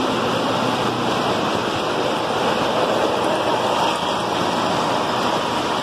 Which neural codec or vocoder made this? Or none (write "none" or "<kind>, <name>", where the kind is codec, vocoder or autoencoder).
none